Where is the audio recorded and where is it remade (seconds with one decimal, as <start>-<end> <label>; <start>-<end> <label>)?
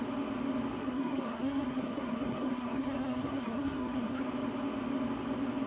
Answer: 0.0-0.8 recorded; 0.8-4.2 remade; 4.2-5.7 recorded